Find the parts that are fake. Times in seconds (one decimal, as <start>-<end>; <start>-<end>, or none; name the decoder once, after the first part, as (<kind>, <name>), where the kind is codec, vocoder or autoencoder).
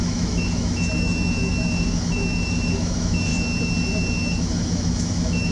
0.0-3.3 (autoencoder, DAC-VAE); 4.4-5.5